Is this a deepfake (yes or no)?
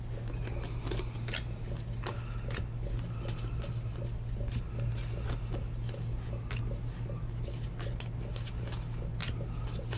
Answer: no